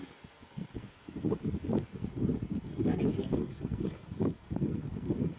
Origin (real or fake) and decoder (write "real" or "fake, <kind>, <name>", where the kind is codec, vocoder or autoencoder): fake, codec, SNAC